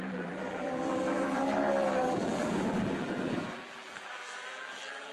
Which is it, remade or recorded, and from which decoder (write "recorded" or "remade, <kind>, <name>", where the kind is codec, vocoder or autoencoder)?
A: remade, vocoder, BigVGAN v2